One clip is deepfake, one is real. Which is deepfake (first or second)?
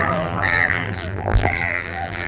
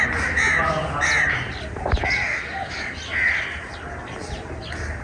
first